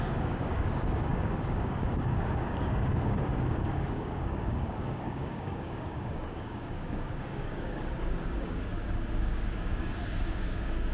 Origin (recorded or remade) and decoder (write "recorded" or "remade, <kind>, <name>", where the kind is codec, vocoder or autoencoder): remade, codec, DAC